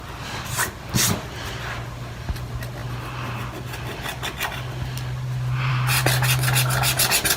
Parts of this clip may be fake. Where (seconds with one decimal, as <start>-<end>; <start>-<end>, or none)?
none